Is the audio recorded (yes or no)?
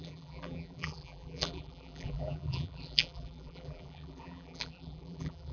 no